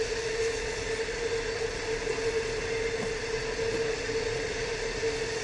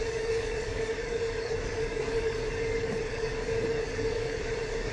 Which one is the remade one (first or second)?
second